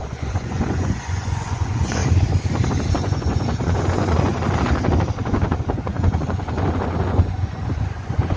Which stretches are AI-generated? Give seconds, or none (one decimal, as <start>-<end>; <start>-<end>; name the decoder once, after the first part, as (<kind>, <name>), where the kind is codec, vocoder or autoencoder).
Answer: 0.0-2.0 (vocoder, Vocos); 2.9-4.3; 5.2-8.4